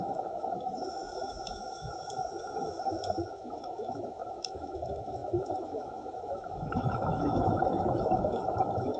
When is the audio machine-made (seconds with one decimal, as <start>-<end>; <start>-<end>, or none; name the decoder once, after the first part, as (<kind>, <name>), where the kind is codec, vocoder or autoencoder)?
0.0-9.0 (autoencoder, DAC-VAE)